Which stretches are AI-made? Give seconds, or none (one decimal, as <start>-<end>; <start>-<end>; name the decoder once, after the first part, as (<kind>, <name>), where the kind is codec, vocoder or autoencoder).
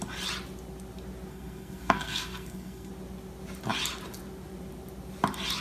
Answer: 1.3-2.9 (codec, SNAC)